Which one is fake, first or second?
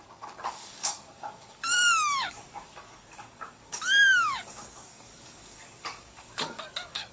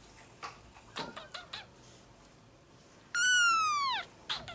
first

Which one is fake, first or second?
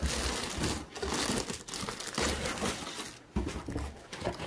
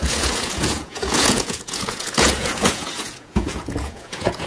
second